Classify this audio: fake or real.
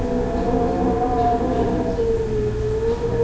real